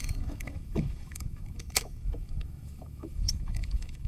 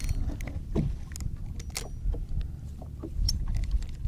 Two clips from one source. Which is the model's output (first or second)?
first